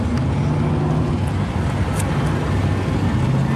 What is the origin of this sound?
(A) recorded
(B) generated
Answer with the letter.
A